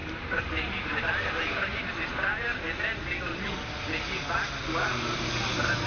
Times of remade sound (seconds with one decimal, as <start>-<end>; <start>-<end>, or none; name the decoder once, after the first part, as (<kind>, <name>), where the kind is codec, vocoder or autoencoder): 0.0-1.0 (vocoder, BigVGAN v2)